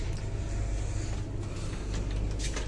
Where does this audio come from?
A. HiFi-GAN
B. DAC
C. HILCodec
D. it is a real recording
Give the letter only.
D